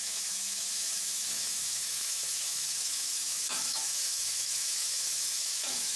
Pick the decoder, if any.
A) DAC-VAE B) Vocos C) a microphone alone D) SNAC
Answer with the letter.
A